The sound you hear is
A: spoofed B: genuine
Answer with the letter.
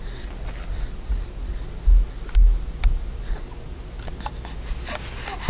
B